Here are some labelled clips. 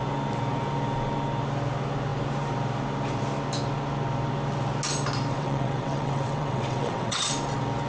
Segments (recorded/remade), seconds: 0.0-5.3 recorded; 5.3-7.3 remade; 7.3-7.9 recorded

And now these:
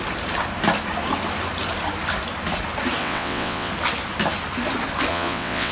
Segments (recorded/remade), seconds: 0.0-3.0 recorded; 3.0-3.7 remade; 3.7-5.1 recorded; 5.1-5.7 remade